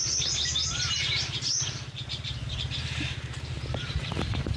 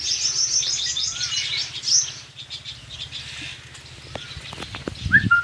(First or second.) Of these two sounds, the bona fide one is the second